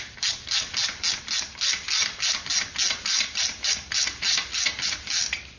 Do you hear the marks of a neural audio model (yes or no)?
no